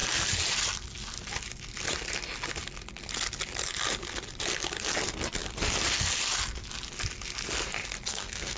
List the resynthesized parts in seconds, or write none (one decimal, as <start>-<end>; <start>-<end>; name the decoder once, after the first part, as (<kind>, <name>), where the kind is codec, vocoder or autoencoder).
8.1-8.6 (codec, SNAC)